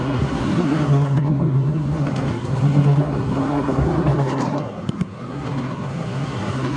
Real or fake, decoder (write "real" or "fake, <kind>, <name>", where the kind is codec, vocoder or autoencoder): fake, codec, SNAC